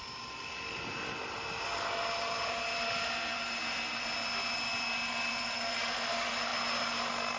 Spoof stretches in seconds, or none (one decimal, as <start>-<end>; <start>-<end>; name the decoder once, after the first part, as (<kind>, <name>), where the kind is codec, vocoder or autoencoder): none